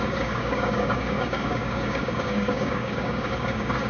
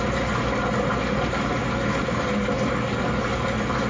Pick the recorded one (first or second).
second